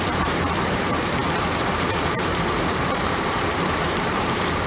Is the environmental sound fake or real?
fake